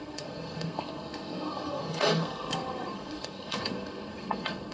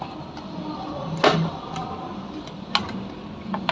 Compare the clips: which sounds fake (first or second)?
first